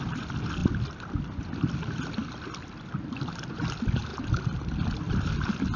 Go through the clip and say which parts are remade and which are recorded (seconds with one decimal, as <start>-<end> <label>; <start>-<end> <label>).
0.0-5.8 recorded